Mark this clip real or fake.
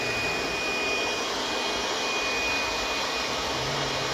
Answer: real